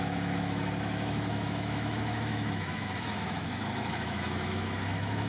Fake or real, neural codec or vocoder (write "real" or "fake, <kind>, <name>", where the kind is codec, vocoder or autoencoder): fake, autoencoder, DAC-VAE